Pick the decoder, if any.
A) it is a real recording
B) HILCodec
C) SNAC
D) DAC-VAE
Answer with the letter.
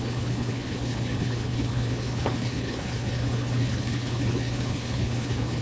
B